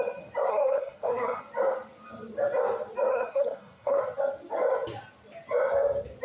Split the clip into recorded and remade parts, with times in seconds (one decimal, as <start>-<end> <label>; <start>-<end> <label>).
0.0-0.5 recorded; 0.5-1.4 remade; 1.4-3.1 recorded; 3.1-4.0 remade; 4.0-6.2 recorded